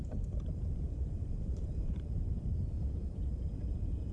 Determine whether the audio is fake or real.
fake